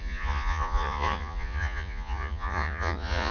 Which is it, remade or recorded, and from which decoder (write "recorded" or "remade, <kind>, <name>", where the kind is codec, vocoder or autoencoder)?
remade, vocoder, Vocos